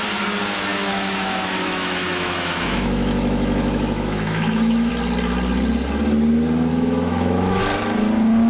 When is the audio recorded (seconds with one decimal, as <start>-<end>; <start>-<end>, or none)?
0.0-0.7; 4.9-6.7; 7.6-8.5